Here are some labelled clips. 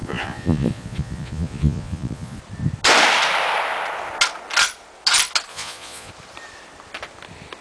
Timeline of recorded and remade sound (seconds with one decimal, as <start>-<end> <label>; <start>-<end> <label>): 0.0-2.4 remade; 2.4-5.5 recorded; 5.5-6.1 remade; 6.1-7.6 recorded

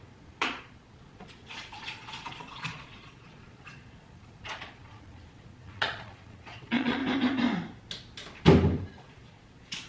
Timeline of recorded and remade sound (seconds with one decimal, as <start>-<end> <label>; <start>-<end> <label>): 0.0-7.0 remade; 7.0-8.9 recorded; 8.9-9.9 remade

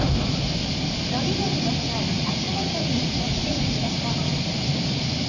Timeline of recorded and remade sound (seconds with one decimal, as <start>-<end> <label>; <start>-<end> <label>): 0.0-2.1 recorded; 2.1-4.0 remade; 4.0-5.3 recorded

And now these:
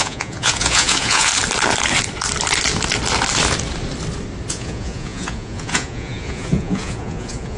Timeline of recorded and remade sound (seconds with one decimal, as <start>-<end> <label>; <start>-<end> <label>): 0.0-1.3 remade; 1.3-4.5 recorded; 4.5-7.6 remade

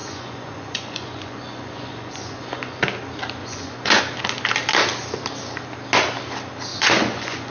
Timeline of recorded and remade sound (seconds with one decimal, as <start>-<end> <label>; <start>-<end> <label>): 0.0-2.8 remade; 2.8-3.4 recorded; 3.4-4.0 remade; 4.0-6.7 recorded; 6.7-7.5 remade

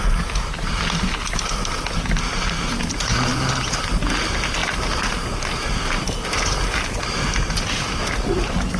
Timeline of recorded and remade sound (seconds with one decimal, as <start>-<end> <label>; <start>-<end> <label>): 0.0-8.8 recorded

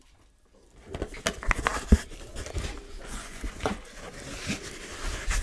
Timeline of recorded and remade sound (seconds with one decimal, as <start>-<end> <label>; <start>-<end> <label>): 0.0-3.0 recorded; 3.0-4.1 remade; 4.1-5.4 recorded

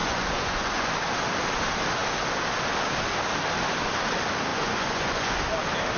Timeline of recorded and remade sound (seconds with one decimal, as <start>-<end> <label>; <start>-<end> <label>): 0.0-0.9 remade; 0.9-4.5 recorded; 4.5-5.4 remade; 5.4-6.0 recorded